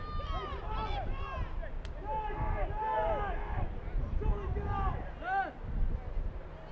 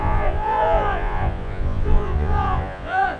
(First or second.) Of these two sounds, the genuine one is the first